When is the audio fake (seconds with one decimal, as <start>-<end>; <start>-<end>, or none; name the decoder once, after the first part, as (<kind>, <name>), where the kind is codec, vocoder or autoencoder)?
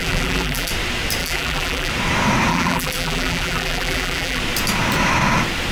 0.0-0.7 (vocoder, BigVGAN v2); 1.2-1.9; 2.5-4.4